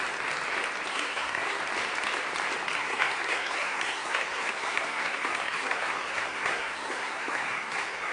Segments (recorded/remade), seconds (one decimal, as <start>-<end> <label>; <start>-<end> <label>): 0.0-0.9 recorded; 0.9-1.6 remade; 1.6-2.8 recorded; 2.8-8.1 remade